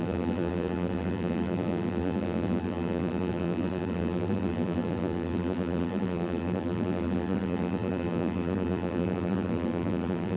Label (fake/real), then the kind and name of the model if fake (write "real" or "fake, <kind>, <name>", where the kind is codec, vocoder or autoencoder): fake, vocoder, BigVGAN v2